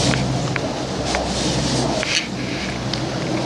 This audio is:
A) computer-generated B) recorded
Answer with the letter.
B